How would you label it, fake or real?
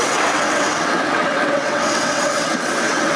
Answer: fake